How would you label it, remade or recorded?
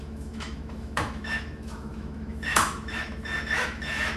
remade